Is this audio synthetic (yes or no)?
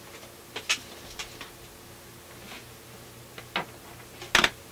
no